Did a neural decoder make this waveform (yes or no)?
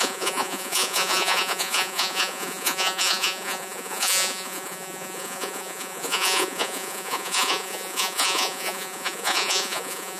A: yes